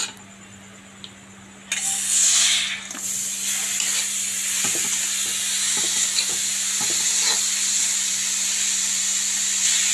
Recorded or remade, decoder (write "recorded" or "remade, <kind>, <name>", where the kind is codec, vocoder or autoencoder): recorded